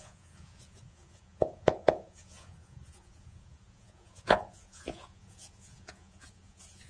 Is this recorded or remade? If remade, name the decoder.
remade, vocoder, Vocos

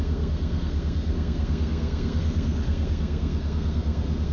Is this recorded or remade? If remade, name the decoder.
remade, codec, SNAC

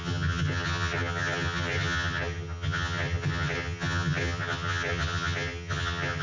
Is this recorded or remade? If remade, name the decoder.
remade, vocoder, HiFi-GAN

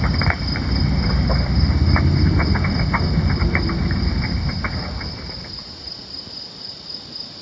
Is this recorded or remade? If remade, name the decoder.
recorded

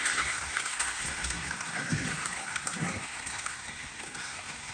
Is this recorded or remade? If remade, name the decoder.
remade, codec, SNAC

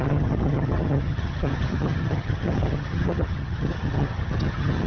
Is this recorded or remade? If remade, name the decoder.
remade, vocoder, HiFi-GAN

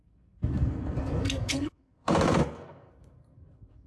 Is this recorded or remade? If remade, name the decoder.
remade, codec, SNAC